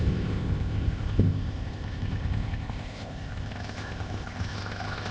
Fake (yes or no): yes